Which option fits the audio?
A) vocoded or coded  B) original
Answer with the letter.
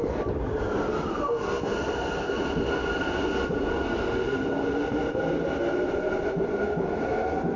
B